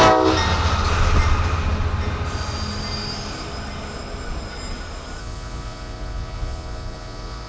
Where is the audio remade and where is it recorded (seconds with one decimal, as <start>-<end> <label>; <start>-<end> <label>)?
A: 0.0-5.2 recorded; 5.2-7.5 remade